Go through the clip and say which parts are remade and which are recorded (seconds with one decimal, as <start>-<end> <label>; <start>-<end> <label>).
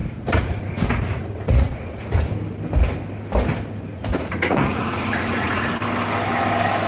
0.0-2.3 remade; 2.3-3.9 recorded; 3.9-5.7 remade; 5.7-6.9 recorded